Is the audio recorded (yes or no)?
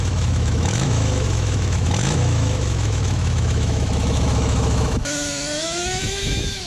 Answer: no